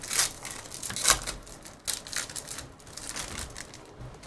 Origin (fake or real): real